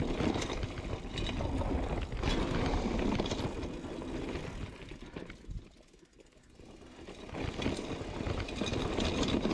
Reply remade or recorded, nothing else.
recorded